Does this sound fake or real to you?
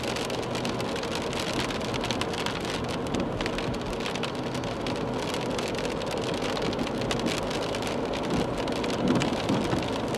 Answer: real